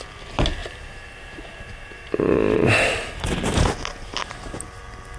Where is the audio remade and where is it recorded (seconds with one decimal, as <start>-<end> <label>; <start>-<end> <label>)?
0.0-0.6 recorded; 0.6-3.1 remade; 3.1-4.2 recorded; 4.2-4.8 remade; 4.8-5.2 recorded